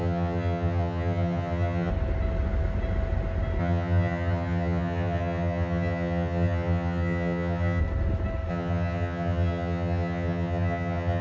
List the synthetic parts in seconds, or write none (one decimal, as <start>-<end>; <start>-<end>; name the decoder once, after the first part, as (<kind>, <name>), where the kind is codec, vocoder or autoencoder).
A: 0.0-1.9 (vocoder, HiFi-GAN); 3.6-7.8; 8.5-11.2